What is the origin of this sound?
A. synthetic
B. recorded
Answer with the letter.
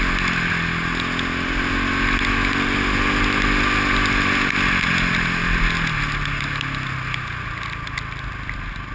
B